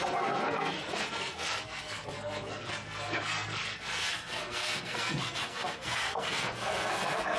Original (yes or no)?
no